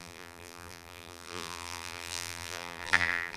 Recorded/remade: remade